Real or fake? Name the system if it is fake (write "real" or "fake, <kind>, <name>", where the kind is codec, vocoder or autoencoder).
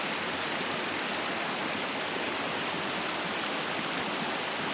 real